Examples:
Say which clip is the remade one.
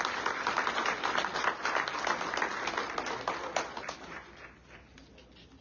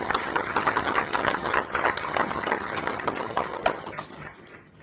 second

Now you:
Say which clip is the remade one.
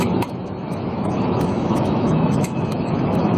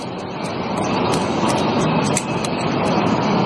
first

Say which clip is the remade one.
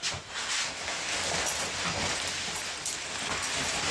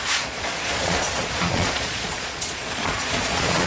second